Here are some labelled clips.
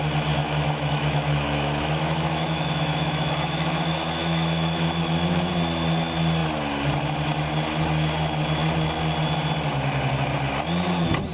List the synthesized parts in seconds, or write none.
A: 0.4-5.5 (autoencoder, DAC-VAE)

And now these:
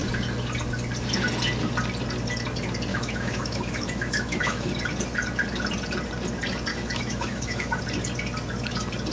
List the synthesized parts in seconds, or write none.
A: 2.9-4.7 (autoencoder, DAC-VAE); 6.7-7.8

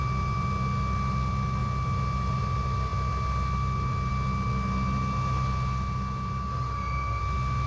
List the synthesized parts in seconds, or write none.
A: 6.5-7.2 (autoencoder, DAC-VAE)

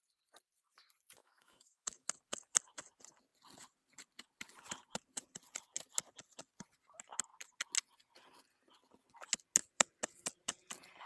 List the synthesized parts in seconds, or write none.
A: 1.2-2.1 (autoencoder, DAC-VAE)